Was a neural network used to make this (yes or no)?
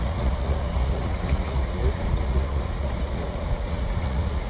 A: yes